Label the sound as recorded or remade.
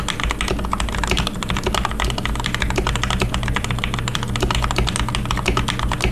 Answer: recorded